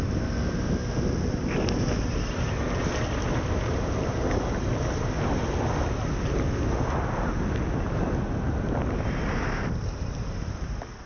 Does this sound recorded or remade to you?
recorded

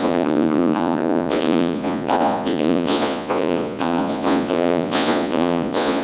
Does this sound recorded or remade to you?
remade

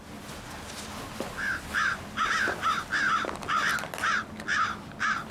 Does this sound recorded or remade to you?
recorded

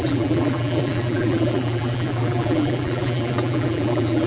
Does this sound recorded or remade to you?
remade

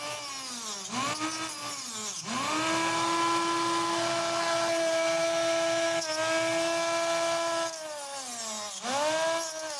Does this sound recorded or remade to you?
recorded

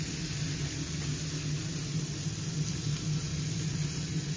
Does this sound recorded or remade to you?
recorded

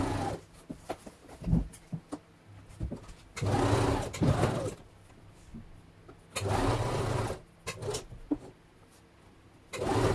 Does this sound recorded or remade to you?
recorded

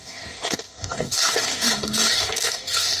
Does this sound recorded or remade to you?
remade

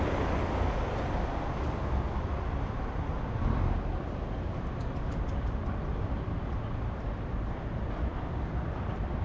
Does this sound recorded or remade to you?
recorded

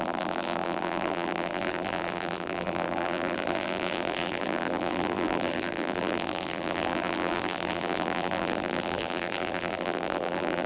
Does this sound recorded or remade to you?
remade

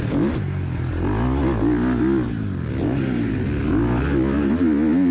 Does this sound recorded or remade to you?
recorded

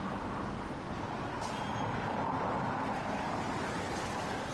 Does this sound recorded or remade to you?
recorded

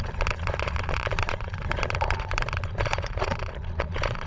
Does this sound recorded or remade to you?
remade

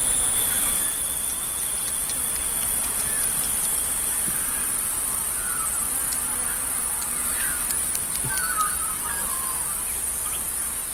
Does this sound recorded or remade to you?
remade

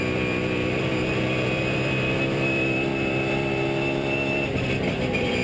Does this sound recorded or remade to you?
remade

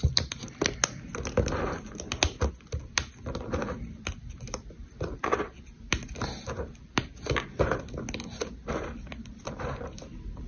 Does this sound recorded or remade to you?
remade